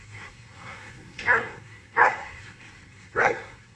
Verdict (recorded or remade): remade